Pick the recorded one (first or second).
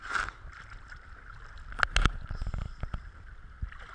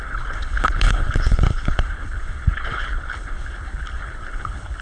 first